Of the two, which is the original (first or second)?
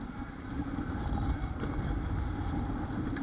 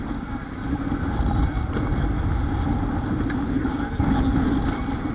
second